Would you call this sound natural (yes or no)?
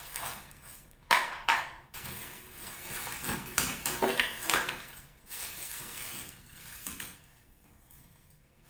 no